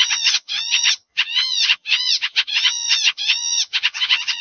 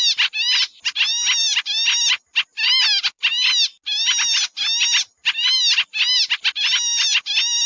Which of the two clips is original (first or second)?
second